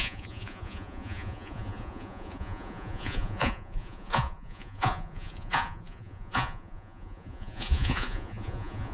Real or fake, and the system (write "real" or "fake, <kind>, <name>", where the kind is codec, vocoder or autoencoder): fake, vocoder, Vocos